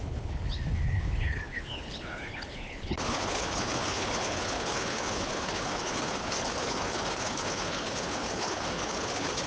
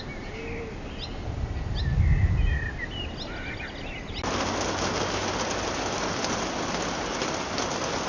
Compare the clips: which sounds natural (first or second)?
second